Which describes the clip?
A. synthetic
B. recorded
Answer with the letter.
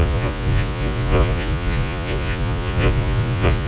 A